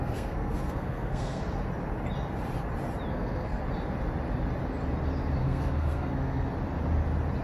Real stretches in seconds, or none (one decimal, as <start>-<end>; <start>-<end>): 1.4-3.1; 3.6-5.4; 6.5-7.4